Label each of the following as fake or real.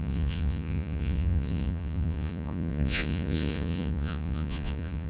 fake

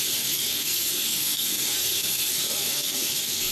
fake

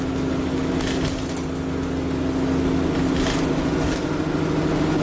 real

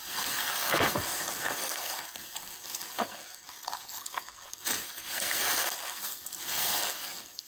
fake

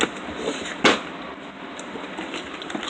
real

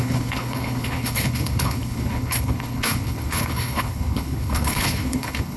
fake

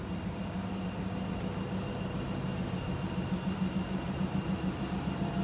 real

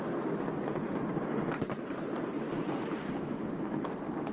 fake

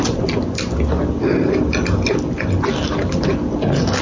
real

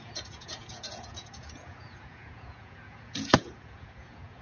fake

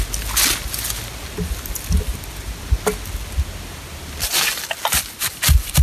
real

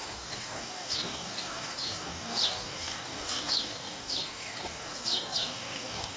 fake